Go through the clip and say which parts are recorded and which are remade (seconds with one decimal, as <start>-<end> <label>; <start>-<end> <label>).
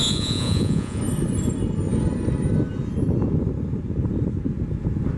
0.0-1.0 remade; 1.0-5.2 recorded